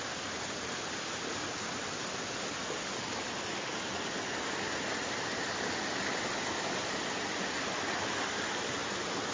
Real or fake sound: real